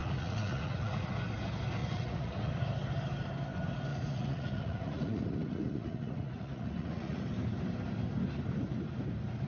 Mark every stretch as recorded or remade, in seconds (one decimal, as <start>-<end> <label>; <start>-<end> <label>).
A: 0.0-1.1 remade; 1.1-1.8 recorded; 1.8-2.5 remade; 2.5-3.9 recorded; 3.9-7.2 remade; 7.2-9.5 recorded